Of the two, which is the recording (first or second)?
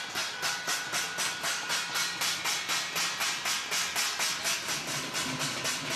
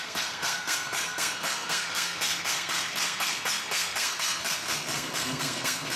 first